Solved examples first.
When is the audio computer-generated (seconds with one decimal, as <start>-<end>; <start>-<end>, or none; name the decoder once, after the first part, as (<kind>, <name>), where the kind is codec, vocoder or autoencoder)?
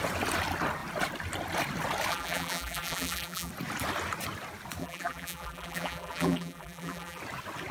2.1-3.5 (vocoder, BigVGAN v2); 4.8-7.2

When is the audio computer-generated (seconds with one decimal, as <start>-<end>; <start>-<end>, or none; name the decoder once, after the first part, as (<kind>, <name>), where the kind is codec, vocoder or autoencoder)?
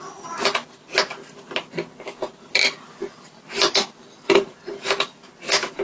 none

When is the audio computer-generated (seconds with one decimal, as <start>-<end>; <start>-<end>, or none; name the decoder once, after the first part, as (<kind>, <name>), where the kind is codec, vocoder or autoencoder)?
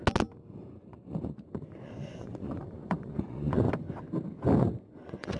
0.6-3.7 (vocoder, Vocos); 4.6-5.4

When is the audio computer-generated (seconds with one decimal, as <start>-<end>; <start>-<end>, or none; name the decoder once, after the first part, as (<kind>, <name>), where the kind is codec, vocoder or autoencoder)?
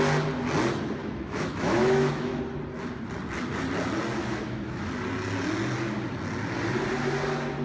1.0-2.4 (autoencoder, DAC-VAE); 4.2-4.8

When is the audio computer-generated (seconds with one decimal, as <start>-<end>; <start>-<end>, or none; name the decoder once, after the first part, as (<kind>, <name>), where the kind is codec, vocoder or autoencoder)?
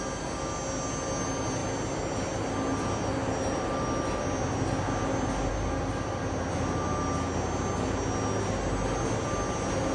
none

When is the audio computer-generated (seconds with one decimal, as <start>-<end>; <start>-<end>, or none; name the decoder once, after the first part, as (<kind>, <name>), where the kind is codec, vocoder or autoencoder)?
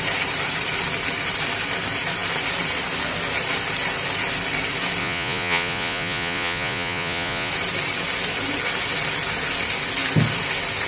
5.0-7.5 (vocoder, Vocos)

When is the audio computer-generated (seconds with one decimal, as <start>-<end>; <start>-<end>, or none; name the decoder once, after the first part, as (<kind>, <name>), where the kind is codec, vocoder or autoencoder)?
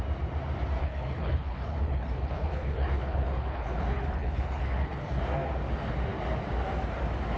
0.8-5.2 (codec, HILCodec)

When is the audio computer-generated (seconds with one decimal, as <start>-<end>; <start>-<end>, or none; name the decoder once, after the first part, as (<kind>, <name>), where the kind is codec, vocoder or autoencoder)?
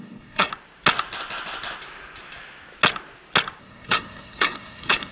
0.0-0.5 (codec, SNAC); 3.6-5.1